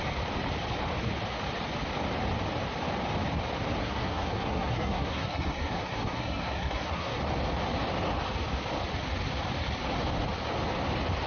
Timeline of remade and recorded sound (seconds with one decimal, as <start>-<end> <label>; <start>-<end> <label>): 0.0-3.8 recorded; 3.8-7.2 remade; 7.2-11.3 recorded